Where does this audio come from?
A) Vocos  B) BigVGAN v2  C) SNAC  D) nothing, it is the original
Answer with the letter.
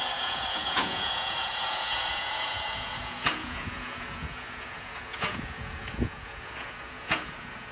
A